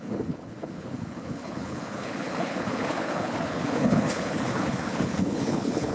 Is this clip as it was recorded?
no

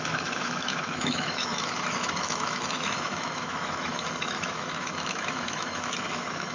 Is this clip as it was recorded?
no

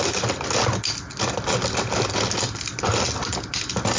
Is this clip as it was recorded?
yes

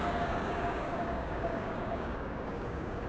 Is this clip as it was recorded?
no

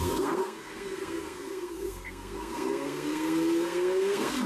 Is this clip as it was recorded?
no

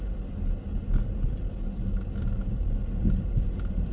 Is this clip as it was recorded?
yes